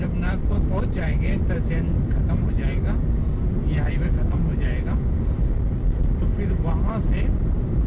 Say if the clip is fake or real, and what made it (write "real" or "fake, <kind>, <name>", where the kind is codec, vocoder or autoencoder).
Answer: fake, vocoder, BigVGAN v2